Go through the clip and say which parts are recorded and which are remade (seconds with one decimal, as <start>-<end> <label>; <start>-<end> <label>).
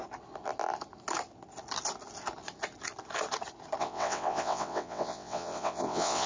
0.0-3.8 recorded; 3.8-6.3 remade